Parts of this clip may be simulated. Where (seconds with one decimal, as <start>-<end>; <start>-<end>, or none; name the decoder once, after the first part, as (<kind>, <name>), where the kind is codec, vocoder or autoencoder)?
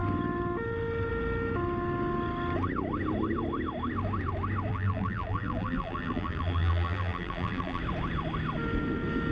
4.7-7.8 (vocoder, BigVGAN v2)